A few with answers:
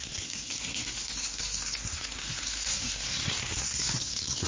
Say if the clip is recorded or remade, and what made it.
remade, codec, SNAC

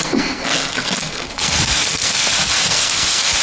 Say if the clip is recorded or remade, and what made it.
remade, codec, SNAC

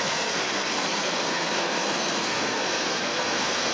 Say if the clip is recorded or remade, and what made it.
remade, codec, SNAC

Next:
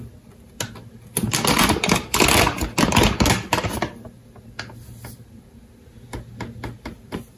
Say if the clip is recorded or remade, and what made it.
recorded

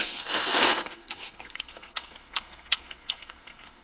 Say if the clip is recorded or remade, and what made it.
remade, codec, SNAC